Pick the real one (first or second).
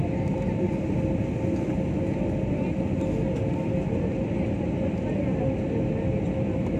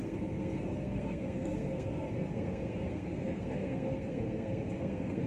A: first